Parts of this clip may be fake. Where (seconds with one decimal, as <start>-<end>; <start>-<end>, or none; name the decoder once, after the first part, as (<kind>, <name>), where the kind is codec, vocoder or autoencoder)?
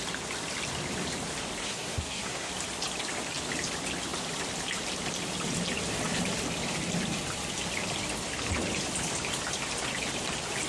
1.6-2.5 (codec, SNAC)